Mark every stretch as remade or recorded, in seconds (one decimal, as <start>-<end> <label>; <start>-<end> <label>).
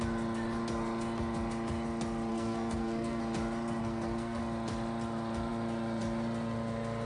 0.0-2.3 recorded; 2.3-3.2 remade; 3.2-3.8 recorded; 3.8-4.4 remade; 4.4-7.1 recorded